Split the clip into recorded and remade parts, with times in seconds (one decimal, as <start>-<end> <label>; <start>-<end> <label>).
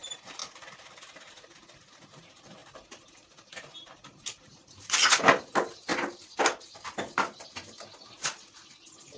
0.0-9.2 recorded